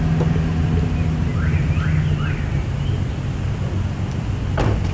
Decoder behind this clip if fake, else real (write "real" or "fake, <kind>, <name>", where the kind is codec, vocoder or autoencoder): real